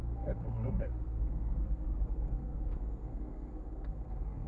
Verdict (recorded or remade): remade